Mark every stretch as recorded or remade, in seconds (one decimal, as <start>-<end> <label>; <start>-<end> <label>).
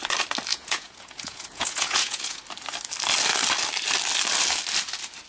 0.0-0.5 recorded; 0.5-2.4 remade; 2.4-5.3 recorded